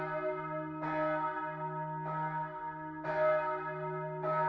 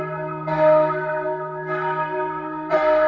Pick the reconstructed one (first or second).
second